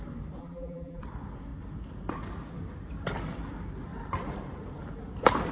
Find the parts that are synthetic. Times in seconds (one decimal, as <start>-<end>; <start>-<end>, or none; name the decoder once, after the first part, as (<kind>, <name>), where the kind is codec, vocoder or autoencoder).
0.4-1.0 (vocoder, BigVGAN v2)